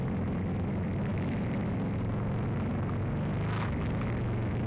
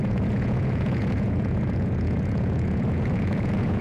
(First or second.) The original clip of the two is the first